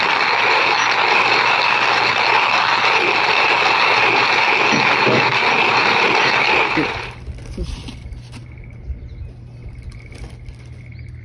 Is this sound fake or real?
real